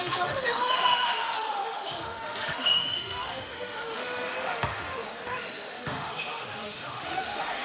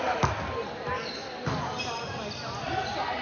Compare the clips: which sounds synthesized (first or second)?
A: first